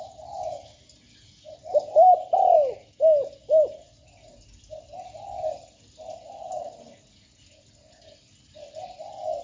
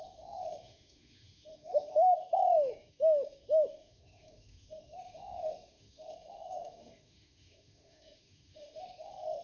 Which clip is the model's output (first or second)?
second